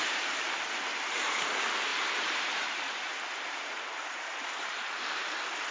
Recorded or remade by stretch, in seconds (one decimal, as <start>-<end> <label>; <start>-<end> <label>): 0.0-0.6 remade; 0.6-1.9 recorded; 1.9-5.3 remade; 5.3-5.7 recorded

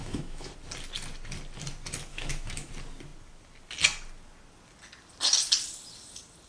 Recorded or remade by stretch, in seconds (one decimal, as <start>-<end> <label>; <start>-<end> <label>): 0.0-0.5 remade; 0.5-2.1 recorded; 2.1-2.7 remade; 2.7-6.5 recorded

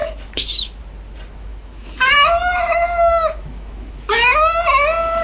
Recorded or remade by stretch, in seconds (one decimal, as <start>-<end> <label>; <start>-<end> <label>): 0.0-0.8 remade; 0.8-1.5 recorded; 1.5-4.6 remade; 4.6-5.2 recorded

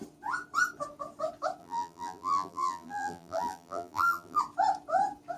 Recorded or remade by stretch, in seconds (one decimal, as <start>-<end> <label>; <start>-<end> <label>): 0.0-1.6 recorded; 1.6-4.4 remade; 4.4-5.4 recorded

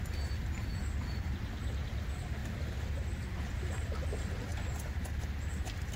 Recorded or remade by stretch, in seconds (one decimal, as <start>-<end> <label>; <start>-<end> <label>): 0.0-6.0 recorded

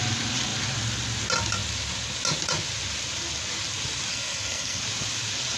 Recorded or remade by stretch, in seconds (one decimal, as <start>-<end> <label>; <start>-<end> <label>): 0.0-4.1 recorded; 4.1-4.8 remade; 4.8-5.6 recorded

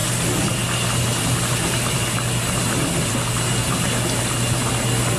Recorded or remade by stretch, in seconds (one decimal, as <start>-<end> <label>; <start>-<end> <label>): 0.0-5.2 recorded